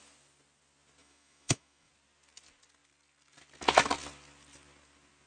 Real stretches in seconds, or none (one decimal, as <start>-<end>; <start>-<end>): 0.0-1.0; 1.9-5.3